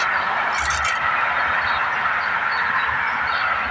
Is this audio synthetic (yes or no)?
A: no